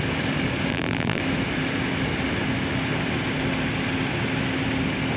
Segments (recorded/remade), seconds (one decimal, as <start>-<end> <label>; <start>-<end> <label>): 0.0-0.7 recorded; 0.7-1.2 remade; 1.2-5.2 recorded